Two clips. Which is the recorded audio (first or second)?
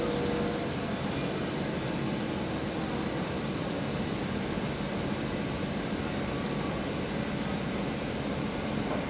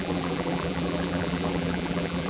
first